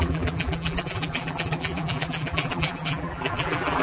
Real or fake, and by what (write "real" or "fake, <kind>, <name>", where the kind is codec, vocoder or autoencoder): fake, vocoder, BigVGAN v2